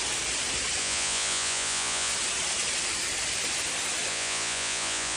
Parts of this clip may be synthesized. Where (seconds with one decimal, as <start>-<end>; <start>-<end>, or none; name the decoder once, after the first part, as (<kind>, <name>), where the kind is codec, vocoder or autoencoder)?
0.8-2.1 (vocoder, Vocos); 4.1-5.2